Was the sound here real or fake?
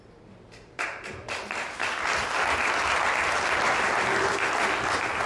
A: real